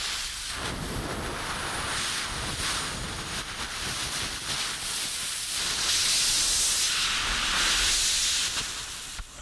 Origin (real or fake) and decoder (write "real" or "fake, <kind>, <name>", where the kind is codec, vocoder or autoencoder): real